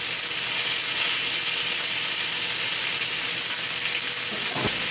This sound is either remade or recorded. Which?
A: recorded